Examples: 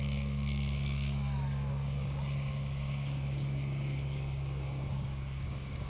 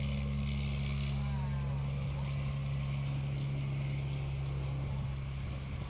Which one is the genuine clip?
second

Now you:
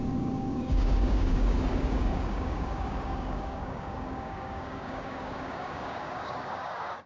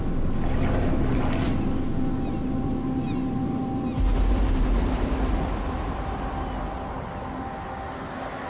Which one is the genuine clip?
second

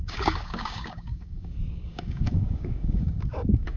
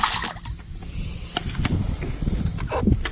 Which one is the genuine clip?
second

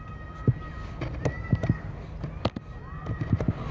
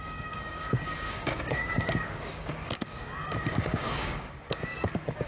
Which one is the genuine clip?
first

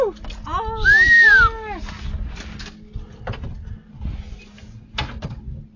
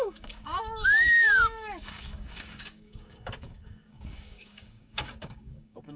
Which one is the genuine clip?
first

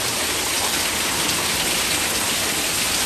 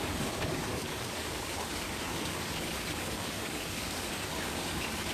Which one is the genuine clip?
first